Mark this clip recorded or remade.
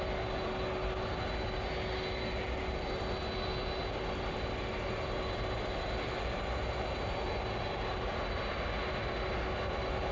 recorded